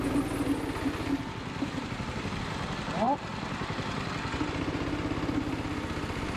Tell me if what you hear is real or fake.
real